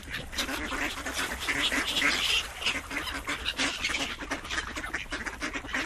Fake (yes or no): no